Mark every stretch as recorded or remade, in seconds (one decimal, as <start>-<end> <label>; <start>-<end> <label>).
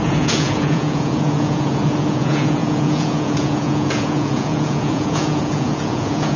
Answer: 0.0-6.4 remade